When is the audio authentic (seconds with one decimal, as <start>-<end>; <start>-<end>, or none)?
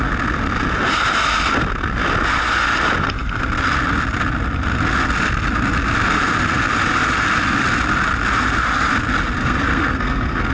0.0-9.4